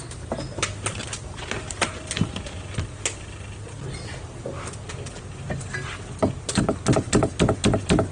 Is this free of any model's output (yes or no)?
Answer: yes